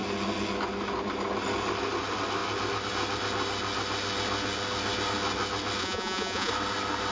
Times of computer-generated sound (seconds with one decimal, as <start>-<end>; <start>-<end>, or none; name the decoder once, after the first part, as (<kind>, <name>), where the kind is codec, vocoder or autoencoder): 5.8-6.5 (vocoder, Vocos)